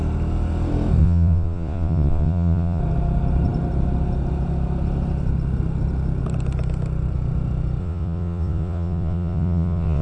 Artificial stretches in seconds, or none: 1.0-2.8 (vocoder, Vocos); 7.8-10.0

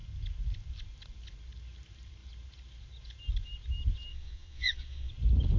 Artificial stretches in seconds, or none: 4.1-5.1 (vocoder, Vocos)

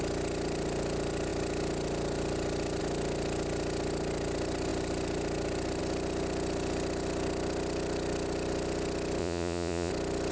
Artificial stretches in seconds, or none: 9.2-9.9 (vocoder, Vocos)